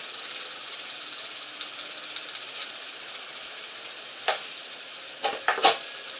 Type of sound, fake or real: real